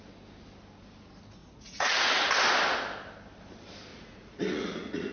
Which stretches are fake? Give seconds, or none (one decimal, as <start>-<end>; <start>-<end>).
1.4-2.3; 3.9-5.1